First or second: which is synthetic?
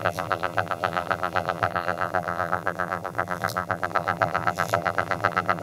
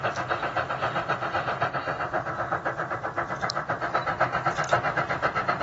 first